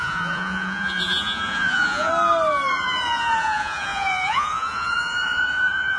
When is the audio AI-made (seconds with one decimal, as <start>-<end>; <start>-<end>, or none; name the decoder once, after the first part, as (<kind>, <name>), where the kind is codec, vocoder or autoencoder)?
0.0-2.1 (vocoder, Vocos); 2.7-6.0